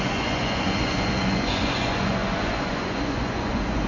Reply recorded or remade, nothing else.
remade